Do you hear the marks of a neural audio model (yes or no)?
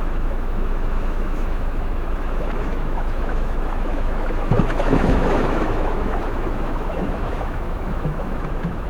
yes